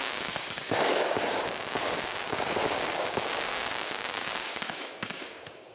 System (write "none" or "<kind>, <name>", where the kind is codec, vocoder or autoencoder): codec, DAC